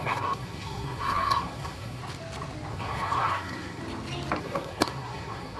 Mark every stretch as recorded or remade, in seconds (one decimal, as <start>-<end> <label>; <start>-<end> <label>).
0.0-2.0 remade; 2.0-2.7 recorded; 2.7-3.8 remade; 3.8-4.4 recorded; 4.4-5.6 remade